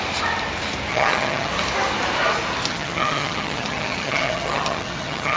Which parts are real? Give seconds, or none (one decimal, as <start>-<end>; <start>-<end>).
0.0-0.9; 1.5-2.7